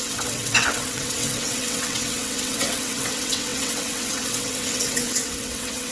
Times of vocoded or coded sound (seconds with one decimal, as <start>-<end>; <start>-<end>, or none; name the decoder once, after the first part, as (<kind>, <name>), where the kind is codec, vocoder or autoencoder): 0.0-5.9 (vocoder, WaveNeXt)